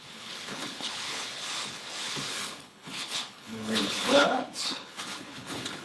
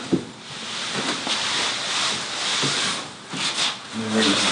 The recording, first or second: second